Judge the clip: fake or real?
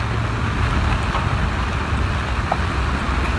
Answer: real